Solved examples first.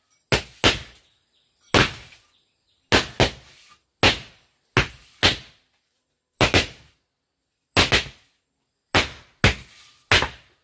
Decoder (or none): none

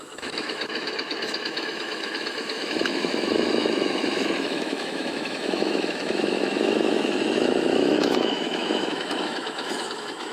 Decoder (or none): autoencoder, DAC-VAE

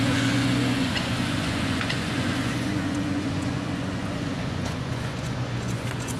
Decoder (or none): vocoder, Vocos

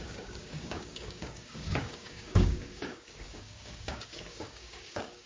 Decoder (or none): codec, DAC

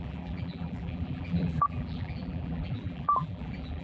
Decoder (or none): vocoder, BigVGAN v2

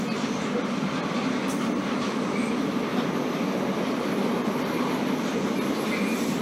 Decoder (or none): none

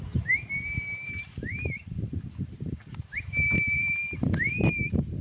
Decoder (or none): vocoder, BigVGAN v2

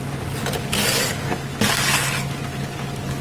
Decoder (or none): none